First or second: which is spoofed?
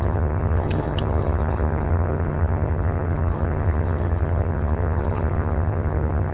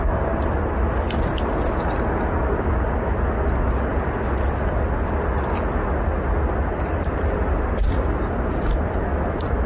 first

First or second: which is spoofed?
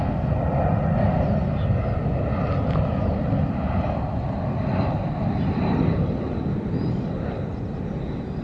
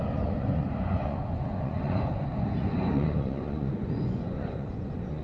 second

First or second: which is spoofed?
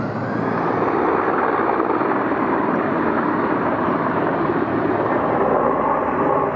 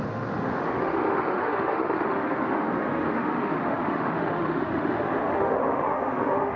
second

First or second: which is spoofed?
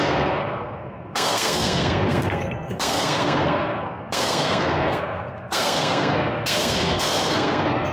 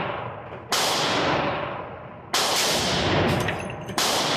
first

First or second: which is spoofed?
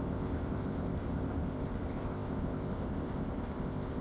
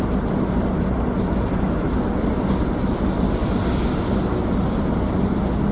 first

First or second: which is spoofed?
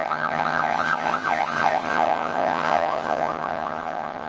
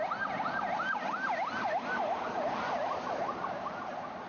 first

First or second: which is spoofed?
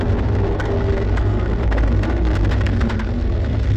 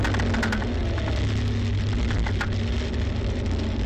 first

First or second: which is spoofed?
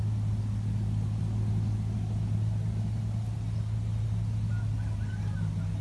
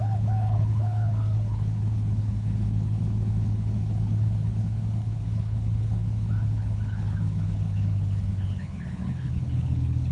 second